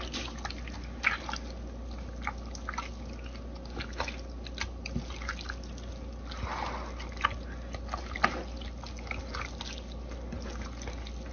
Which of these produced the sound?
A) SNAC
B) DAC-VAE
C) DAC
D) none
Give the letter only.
D